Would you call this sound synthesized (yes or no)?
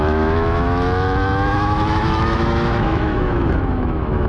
yes